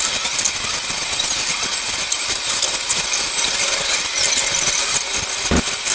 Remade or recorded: recorded